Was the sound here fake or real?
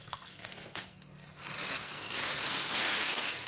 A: fake